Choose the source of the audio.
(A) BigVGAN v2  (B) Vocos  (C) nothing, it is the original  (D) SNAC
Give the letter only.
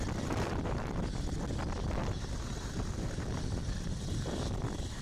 A